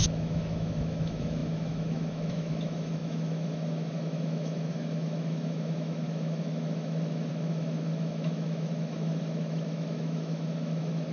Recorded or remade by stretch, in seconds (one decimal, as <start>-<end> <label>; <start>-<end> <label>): 0.0-11.1 remade